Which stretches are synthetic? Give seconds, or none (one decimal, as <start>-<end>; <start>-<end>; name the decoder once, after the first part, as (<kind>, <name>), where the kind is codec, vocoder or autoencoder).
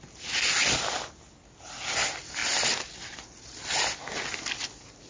none